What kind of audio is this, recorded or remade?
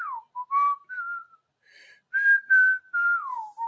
recorded